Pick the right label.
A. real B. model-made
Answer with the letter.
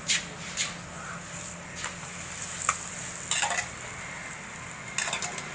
A